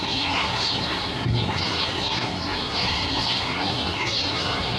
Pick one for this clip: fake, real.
fake